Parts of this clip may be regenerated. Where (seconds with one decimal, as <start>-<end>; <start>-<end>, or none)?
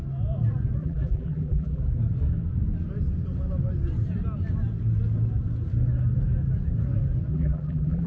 0.8-1.8; 7.3-8.1